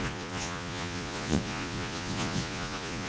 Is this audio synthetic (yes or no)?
yes